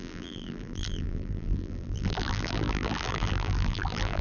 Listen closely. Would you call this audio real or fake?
fake